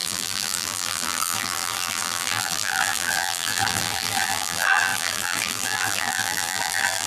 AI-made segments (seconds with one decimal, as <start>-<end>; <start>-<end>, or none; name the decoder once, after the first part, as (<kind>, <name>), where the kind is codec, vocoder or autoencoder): 0.0-7.1 (vocoder, BigVGAN v2)